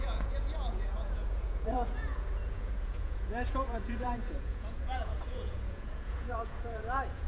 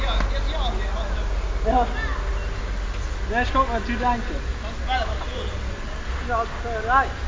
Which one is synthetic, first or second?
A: first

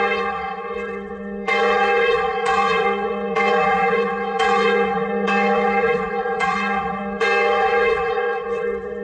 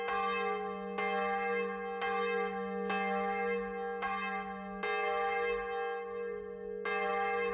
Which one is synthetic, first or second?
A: first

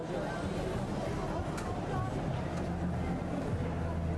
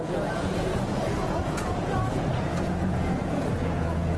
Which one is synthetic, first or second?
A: second